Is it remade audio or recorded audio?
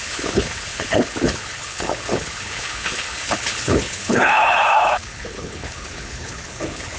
remade